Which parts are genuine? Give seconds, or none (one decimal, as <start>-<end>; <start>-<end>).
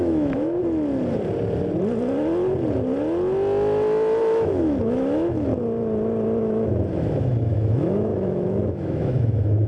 0.6-4.2; 5.5-6.4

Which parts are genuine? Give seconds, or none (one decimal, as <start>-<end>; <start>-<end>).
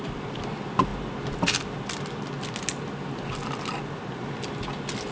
0.0-5.1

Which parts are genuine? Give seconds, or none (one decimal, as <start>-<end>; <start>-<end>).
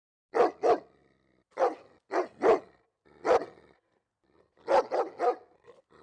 0.0-6.0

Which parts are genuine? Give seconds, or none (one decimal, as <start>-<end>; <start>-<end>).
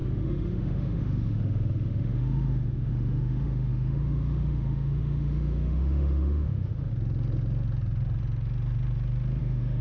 6.9-9.4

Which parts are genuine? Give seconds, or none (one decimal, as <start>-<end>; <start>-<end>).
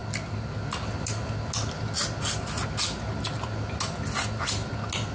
0.0-5.1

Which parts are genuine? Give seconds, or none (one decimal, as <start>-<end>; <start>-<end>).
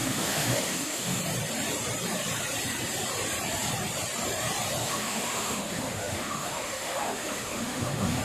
1.2-4.8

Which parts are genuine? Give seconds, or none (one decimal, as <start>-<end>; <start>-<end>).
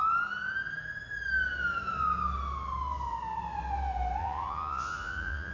0.0-4.2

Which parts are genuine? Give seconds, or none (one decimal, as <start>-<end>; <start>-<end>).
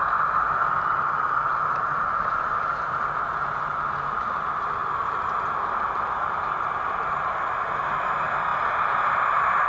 0.0-9.7